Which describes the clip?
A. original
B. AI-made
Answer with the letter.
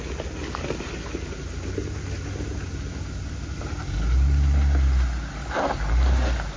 A